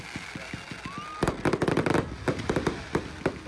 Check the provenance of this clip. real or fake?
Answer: real